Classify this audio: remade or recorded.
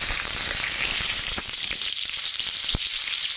remade